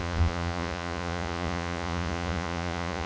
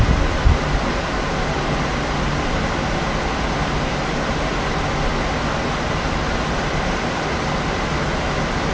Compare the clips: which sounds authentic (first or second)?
second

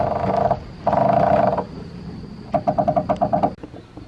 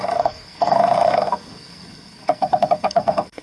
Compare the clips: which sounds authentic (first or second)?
first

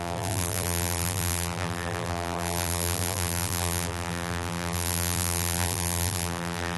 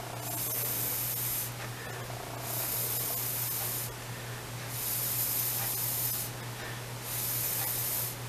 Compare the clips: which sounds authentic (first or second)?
second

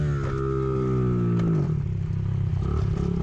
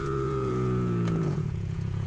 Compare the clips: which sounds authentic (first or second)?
first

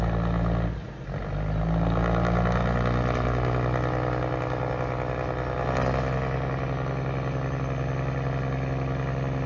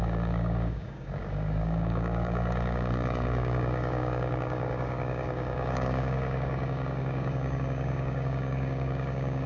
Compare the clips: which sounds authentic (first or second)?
first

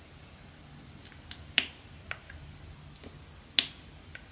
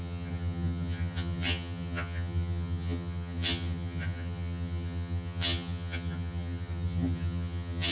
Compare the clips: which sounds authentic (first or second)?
first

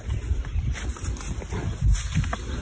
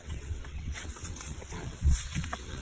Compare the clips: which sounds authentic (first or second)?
first